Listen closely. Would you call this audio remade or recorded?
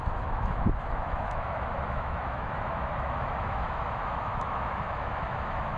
remade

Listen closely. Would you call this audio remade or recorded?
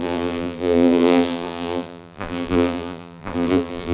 remade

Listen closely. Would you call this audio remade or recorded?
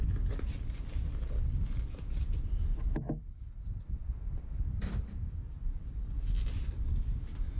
recorded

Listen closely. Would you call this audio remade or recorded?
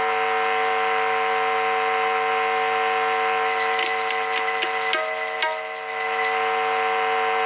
recorded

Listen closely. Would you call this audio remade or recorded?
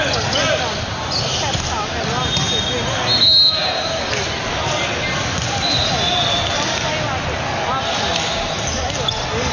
recorded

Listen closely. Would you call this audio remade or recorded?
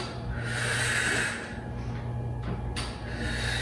recorded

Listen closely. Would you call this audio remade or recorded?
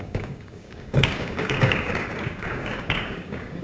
remade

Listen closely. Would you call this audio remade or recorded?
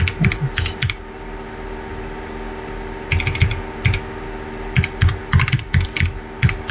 recorded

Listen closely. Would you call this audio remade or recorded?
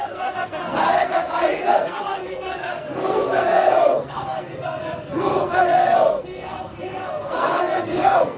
remade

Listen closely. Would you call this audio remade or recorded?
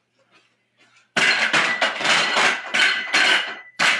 remade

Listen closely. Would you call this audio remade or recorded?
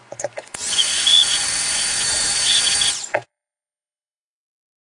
remade